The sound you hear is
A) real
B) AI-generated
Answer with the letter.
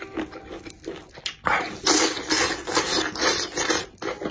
A